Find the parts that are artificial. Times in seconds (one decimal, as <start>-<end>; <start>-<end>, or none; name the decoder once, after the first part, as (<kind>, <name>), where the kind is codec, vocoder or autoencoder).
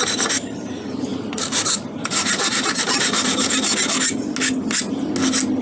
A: 0.0-3.7 (vocoder, BigVGAN v2)